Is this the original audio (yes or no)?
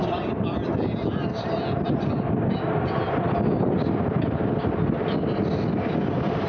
yes